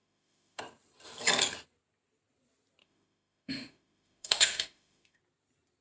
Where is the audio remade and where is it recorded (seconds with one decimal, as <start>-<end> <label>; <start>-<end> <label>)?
0.0-0.6 remade; 0.6-2.8 recorded; 2.8-5.2 remade; 5.2-5.8 recorded